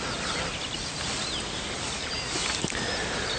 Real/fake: real